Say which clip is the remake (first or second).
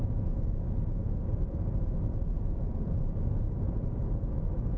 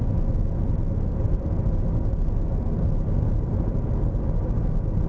first